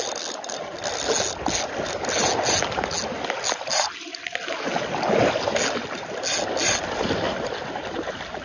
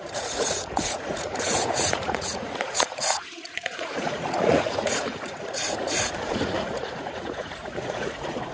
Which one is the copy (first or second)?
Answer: second